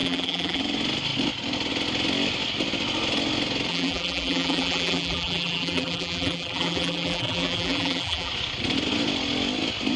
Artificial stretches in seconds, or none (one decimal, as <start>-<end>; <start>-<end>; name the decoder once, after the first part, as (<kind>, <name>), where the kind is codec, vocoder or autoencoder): 0.0-0.6 (vocoder, BigVGAN v2); 3.7-8.3